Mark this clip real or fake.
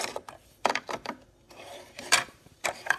fake